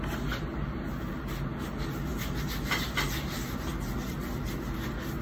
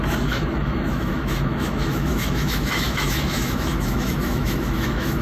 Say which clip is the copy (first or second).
second